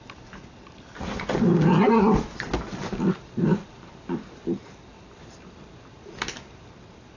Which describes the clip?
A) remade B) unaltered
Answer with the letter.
B